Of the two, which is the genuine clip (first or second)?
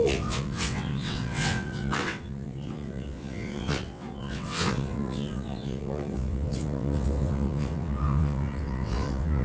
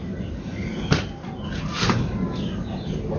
second